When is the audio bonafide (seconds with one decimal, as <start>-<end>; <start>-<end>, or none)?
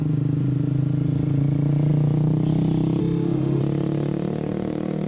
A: 0.0-3.0; 3.6-5.1